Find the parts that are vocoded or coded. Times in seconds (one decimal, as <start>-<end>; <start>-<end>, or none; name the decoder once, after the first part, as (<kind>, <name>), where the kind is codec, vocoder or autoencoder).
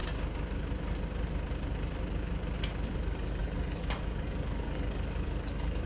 3.0-5.9 (codec, DAC)